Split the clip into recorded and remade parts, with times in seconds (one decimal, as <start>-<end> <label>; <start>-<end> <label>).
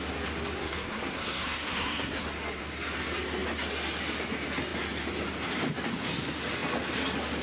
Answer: 0.0-0.6 recorded; 0.6-2.6 remade; 2.6-7.4 recorded